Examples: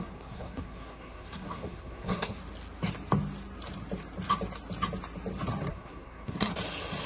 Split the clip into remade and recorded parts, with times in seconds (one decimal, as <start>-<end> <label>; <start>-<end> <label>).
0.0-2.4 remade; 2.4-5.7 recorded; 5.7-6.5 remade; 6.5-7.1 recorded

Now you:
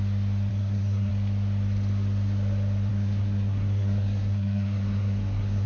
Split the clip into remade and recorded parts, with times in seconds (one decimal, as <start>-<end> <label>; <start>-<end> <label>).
0.0-0.5 recorded; 0.5-1.1 remade; 1.1-2.9 recorded; 2.9-5.7 remade

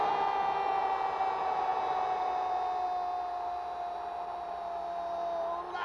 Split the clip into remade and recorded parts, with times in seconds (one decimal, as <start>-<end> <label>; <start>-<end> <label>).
0.0-5.8 recorded